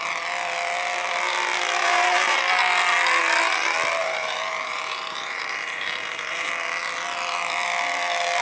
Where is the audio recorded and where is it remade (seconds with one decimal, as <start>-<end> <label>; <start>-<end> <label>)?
0.0-1.8 recorded; 1.8-2.4 remade; 2.4-4.0 recorded; 4.0-6.5 remade; 6.5-8.4 recorded